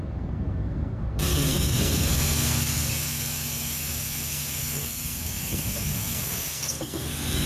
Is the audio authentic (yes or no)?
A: no